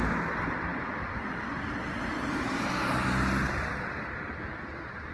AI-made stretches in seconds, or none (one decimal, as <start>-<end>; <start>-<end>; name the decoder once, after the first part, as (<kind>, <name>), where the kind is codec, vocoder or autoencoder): none